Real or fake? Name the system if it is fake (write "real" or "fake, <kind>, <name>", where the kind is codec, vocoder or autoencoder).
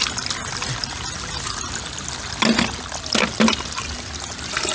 real